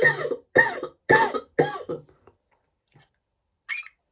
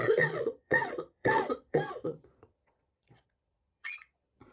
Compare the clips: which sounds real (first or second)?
first